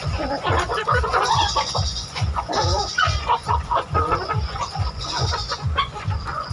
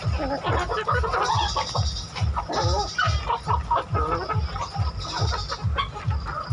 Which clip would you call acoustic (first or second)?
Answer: second